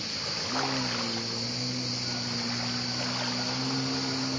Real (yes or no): yes